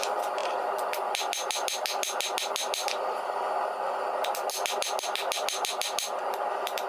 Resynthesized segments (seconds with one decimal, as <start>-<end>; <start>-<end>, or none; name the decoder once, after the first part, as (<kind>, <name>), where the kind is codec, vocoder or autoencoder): none